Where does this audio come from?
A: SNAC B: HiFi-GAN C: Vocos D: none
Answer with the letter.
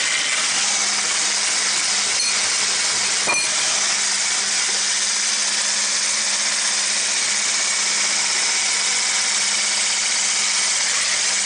D